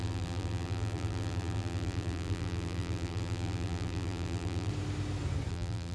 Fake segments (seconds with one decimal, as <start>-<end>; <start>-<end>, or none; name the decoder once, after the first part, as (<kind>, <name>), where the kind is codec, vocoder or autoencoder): 0.0-4.7 (vocoder, BigVGAN v2); 5.5-5.9